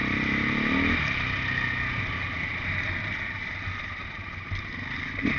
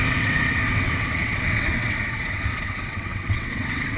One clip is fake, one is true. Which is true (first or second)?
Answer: first